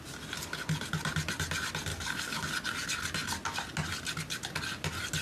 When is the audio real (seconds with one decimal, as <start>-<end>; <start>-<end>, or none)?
0.0-1.9; 2.5-5.2